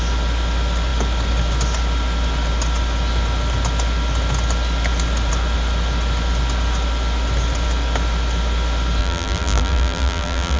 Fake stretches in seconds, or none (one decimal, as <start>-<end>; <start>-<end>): 9.0-10.6